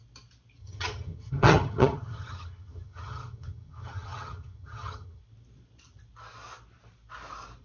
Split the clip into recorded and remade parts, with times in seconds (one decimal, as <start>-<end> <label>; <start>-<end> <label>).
0.0-0.6 recorded; 0.6-5.2 remade; 5.2-7.6 recorded